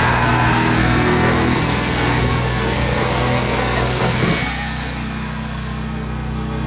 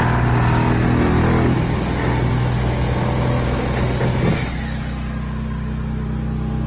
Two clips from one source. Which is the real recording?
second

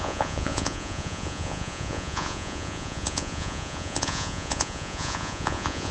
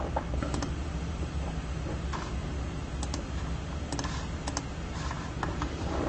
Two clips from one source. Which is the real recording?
second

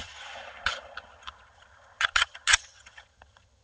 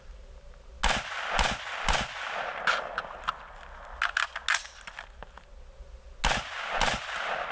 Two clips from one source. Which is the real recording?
second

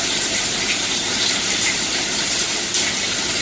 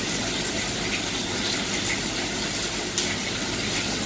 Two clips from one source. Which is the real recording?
second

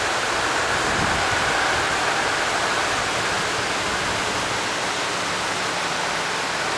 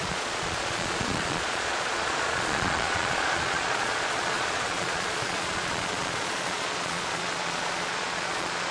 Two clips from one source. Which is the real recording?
first